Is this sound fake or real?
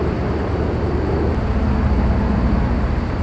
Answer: real